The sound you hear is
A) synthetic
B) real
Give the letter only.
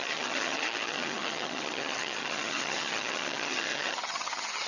A